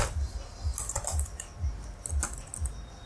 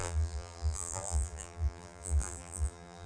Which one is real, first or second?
first